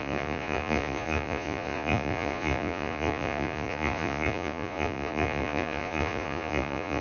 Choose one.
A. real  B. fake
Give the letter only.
B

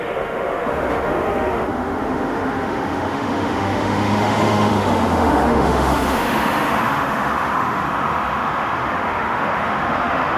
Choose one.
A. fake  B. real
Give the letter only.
A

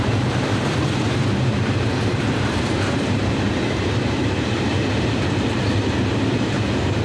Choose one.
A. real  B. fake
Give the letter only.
B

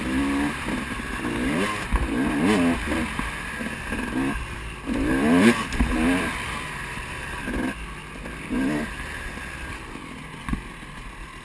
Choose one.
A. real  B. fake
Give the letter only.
A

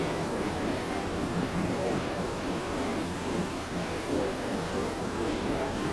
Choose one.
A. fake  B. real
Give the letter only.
A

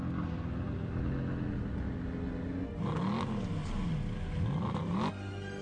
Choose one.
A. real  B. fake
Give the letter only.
A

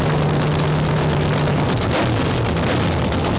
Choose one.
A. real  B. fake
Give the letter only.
A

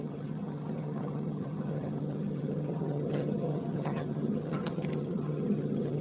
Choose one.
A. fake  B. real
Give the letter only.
A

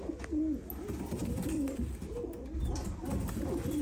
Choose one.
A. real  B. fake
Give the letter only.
A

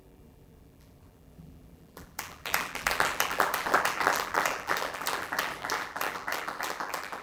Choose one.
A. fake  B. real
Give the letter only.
A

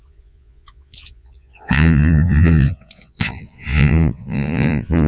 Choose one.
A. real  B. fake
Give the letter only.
B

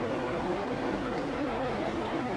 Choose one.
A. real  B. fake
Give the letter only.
B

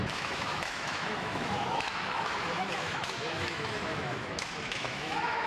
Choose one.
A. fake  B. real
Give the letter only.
A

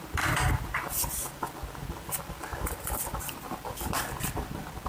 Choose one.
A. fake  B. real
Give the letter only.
A